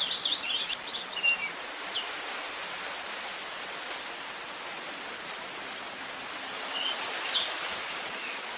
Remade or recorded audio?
recorded